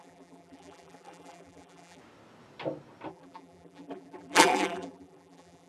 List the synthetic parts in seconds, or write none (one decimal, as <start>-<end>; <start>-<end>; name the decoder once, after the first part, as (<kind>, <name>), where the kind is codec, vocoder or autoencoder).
0.0-2.0 (vocoder, BigVGAN v2); 3.1-5.7